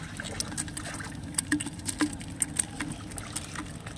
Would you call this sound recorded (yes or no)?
yes